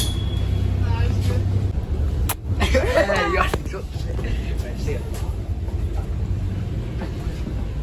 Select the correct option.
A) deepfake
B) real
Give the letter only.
B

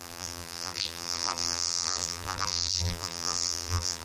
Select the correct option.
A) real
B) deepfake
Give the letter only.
B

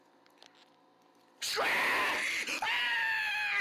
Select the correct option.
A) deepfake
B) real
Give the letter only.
A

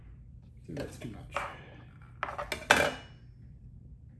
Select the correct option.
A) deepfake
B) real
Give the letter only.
B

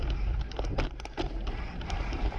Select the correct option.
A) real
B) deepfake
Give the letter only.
B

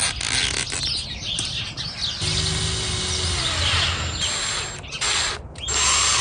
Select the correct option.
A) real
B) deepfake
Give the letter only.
A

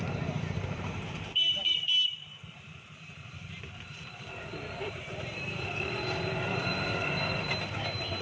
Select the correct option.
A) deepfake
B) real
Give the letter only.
A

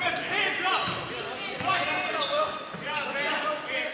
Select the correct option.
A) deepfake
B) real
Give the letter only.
B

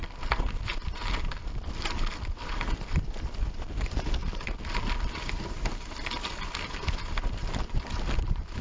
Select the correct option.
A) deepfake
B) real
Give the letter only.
B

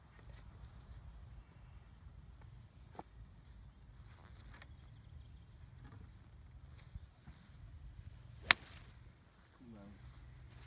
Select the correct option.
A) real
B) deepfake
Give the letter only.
A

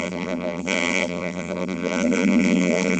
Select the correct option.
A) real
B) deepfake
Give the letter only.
B